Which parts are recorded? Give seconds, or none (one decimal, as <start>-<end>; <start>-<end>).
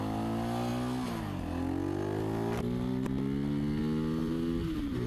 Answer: 0.0-4.2